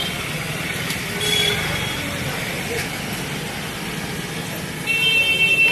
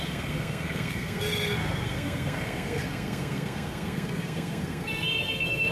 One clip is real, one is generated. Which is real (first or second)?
first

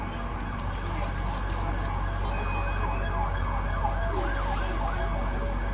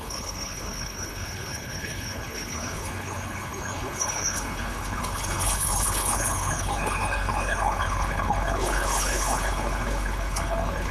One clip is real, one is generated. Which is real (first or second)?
first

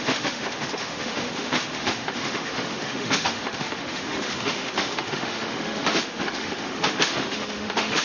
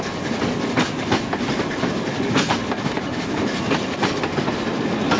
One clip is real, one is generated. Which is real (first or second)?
second